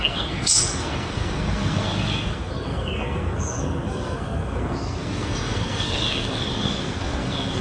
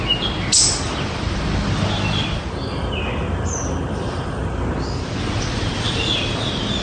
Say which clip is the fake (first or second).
first